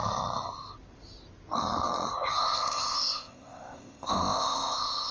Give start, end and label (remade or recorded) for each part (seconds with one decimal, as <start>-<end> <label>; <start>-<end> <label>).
0.0-2.4 recorded; 2.4-5.1 remade